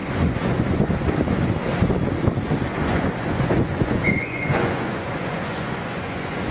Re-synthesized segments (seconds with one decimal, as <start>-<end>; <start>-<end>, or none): 0.0-0.9; 2.7-6.5